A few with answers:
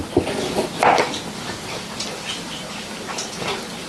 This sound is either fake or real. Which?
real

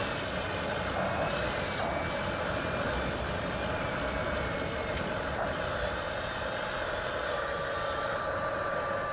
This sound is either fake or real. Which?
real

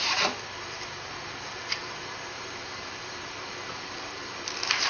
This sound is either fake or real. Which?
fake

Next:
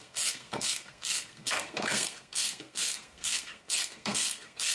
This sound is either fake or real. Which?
fake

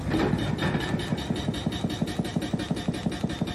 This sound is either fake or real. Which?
real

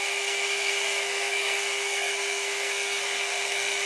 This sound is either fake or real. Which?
fake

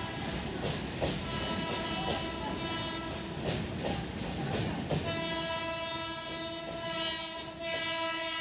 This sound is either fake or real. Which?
real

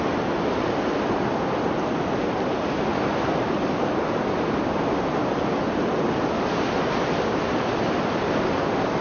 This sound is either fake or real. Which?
real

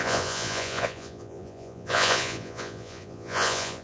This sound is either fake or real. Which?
fake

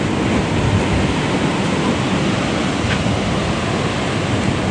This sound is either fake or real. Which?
real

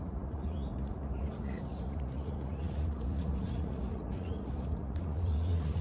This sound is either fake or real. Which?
fake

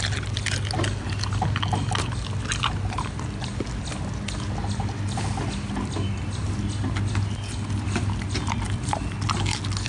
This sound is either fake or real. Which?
real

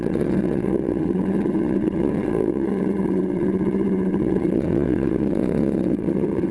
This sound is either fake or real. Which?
fake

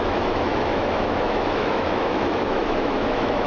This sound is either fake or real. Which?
fake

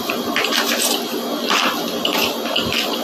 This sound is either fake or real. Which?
real